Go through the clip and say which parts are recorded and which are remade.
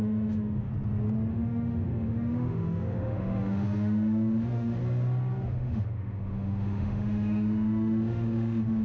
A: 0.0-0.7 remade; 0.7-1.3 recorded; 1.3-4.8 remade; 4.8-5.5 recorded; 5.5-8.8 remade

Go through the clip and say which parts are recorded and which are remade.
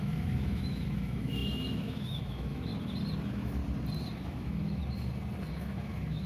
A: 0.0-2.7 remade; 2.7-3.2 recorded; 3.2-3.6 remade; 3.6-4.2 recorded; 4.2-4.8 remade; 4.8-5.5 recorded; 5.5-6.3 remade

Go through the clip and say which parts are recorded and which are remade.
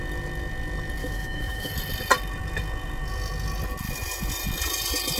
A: 0.0-1.0 recorded; 1.0-1.7 remade; 1.7-5.2 recorded